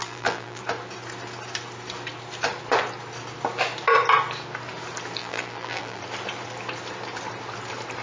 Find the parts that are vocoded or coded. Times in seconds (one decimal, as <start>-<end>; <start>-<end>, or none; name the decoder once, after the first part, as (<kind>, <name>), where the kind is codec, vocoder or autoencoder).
0.0-0.6 (vocoder, BigVGAN v2); 5.2-6.0